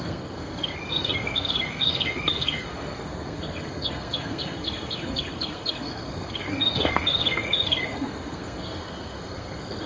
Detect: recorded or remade remade